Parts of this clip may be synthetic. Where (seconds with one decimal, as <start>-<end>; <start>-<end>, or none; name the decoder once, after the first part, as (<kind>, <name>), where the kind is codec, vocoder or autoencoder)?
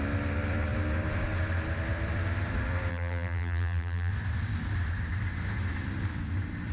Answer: 2.9-4.1 (vocoder, BigVGAN v2)